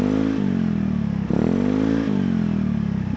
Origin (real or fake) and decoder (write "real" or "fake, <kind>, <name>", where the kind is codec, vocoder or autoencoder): real